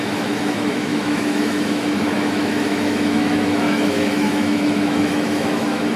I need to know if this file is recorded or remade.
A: remade